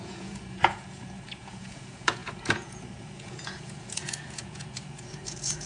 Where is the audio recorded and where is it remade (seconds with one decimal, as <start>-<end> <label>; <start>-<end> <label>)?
0.0-5.7 remade

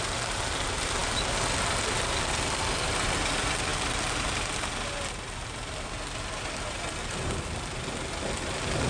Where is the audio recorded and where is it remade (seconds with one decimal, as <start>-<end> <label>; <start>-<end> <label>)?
0.0-8.9 recorded

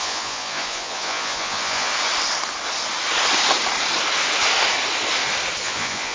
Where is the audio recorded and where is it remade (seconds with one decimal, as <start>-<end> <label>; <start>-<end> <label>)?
0.0-1.9 remade; 1.9-5.6 recorded; 5.6-6.1 remade

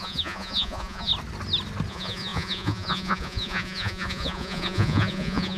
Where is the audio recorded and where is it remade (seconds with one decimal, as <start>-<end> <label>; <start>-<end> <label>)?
0.0-1.1 remade; 1.1-1.9 recorded; 1.9-5.6 remade

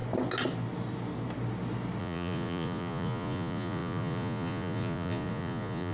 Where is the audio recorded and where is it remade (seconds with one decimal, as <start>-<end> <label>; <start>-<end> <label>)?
0.0-2.0 recorded; 2.0-5.9 remade

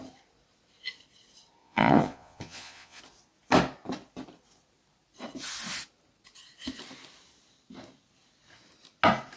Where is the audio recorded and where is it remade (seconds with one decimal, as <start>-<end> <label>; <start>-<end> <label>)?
0.0-1.6 recorded; 1.6-3.0 remade; 3.0-9.4 recorded

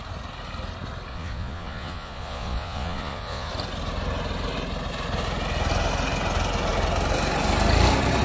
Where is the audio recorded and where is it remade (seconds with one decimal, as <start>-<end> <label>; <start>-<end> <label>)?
0.0-1.1 recorded; 1.1-3.5 remade; 3.5-8.2 recorded